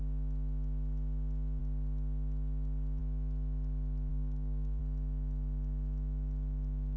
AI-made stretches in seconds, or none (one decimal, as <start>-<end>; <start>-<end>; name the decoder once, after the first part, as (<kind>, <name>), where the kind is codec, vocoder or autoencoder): 4.1-4.8 (codec, DAC)